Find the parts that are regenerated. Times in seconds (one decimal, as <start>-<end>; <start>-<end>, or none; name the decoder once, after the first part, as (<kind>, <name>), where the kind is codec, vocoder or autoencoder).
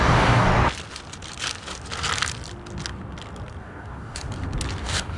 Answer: 0.0-0.5 (codec, DAC); 3.6-4.2; 4.8-5.2